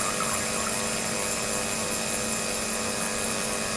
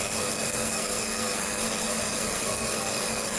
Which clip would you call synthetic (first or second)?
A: second